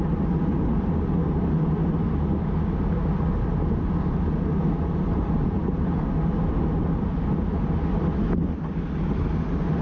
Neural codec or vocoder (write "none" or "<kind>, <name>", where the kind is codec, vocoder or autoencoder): none